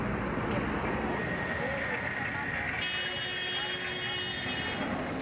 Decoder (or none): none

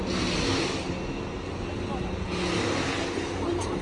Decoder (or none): none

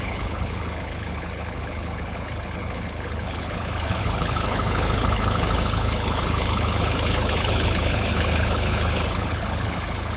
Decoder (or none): codec, HILCodec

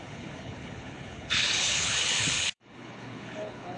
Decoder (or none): codec, HILCodec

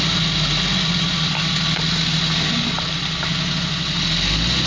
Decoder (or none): none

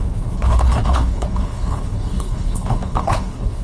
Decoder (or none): codec, HILCodec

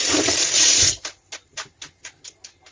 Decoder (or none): none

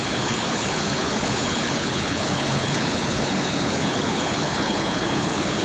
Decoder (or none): codec, HILCodec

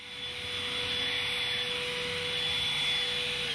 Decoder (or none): none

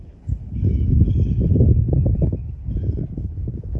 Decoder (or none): codec, HILCodec